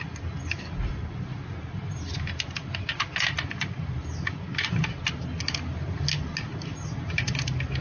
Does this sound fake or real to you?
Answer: real